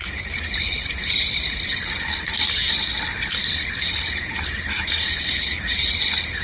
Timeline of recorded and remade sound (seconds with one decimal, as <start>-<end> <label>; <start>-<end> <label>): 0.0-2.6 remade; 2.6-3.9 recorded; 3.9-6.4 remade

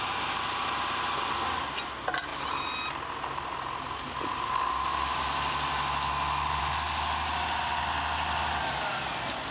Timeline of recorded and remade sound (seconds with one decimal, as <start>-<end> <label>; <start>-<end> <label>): 0.0-9.5 recorded

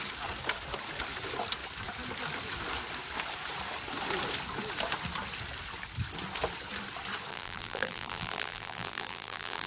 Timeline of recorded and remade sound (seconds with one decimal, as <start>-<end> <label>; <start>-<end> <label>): 0.0-7.3 recorded; 7.3-9.7 remade